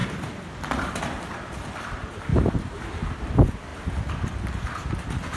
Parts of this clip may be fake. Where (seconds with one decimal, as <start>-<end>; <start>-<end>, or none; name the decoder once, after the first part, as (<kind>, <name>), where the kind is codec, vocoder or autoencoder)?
2.3-3.3 (vocoder, BigVGAN v2)